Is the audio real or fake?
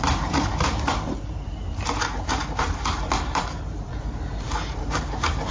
fake